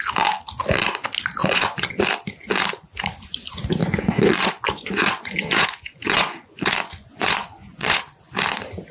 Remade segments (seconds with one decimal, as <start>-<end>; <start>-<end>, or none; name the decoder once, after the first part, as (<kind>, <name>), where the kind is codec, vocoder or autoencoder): 1.4-2.0 (vocoder, Vocos); 3.8-8.0